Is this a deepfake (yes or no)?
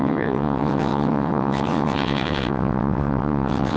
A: yes